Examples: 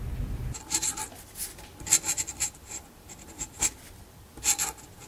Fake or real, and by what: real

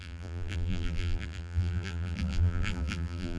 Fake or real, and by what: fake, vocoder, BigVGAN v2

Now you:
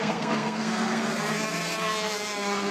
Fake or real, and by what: fake, codec, SNAC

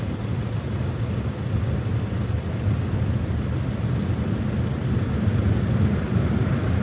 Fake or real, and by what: real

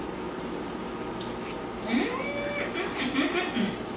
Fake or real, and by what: real